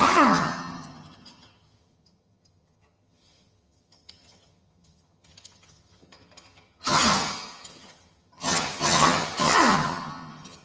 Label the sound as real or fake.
fake